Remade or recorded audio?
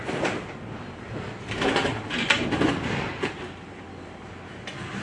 recorded